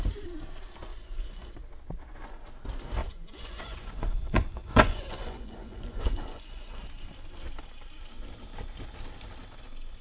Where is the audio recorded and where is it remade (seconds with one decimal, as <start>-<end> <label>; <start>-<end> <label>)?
0.0-0.9 recorded; 0.9-1.5 remade; 1.5-3.0 recorded; 3.0-6.8 remade; 6.8-10.0 recorded